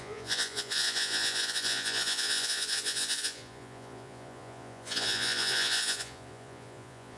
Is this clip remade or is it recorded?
remade